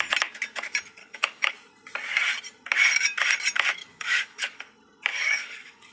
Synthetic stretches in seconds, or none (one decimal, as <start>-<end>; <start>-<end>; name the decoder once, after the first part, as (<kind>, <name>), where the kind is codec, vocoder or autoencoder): 1.0-1.5 (codec, DAC); 3.8-4.6; 5.1-5.9